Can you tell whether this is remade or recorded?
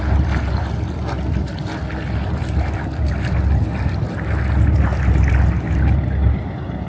recorded